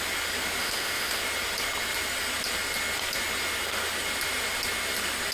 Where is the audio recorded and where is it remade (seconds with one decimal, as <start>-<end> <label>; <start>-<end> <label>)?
0.0-0.6 recorded; 0.6-1.2 remade; 1.2-5.3 recorded